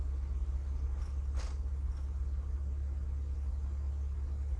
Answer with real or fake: real